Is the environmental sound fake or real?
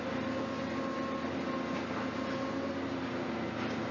real